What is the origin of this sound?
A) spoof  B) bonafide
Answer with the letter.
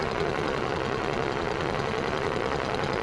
A